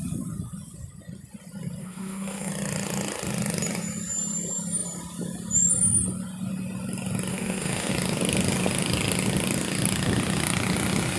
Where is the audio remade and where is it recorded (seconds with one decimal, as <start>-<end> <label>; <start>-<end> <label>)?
0.0-1.8 recorded; 1.8-2.5 remade; 2.5-7.3 recorded; 7.3-7.9 remade; 7.9-11.2 recorded